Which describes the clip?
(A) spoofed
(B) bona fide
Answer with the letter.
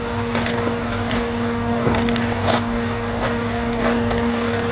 A